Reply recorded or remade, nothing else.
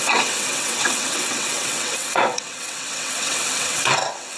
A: remade